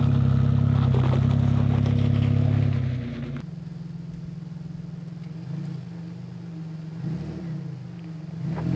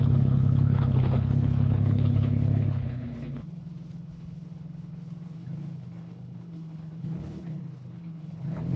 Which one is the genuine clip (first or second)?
first